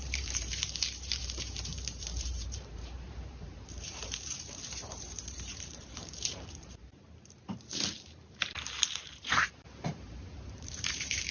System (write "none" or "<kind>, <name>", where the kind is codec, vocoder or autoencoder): vocoder, BigVGAN v2